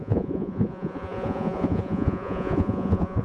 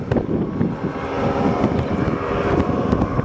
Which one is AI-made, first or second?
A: first